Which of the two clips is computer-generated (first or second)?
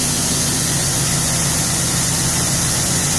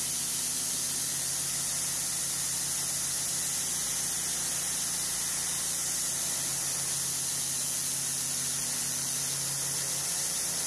first